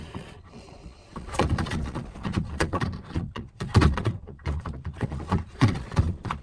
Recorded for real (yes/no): no